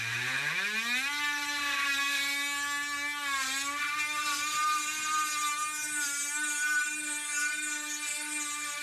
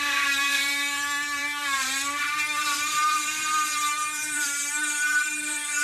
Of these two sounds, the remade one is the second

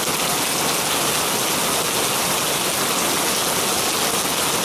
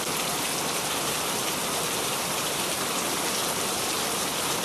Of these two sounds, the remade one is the second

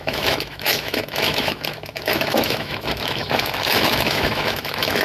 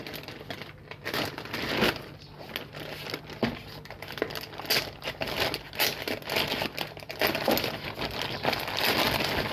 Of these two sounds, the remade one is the first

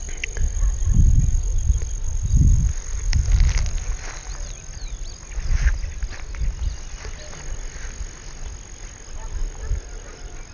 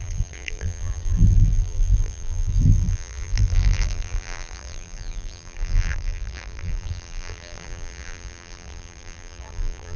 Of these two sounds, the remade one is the second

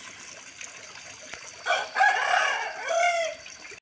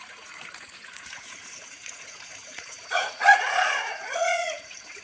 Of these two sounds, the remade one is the second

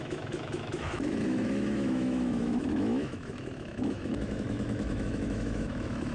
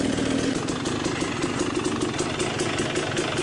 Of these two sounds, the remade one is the first